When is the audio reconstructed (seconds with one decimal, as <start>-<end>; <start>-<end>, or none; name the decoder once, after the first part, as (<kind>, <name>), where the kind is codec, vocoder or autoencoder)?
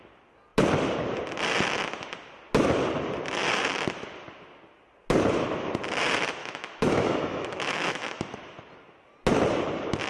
6.4-8.3 (autoencoder, DAC-VAE)